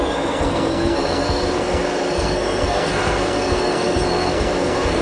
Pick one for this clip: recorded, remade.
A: remade